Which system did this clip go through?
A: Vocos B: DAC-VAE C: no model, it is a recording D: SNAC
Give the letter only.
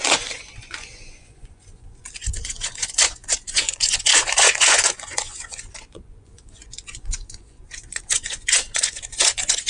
A